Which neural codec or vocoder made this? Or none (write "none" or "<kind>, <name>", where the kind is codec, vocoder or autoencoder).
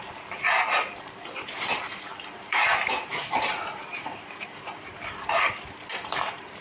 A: vocoder, BigVGAN v2